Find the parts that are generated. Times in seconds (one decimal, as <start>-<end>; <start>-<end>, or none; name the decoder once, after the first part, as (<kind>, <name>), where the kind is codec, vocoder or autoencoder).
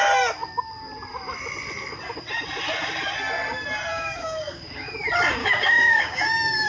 3.9-4.9 (codec, DAC); 5.4-6.7